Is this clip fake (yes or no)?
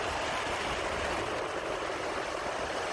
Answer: no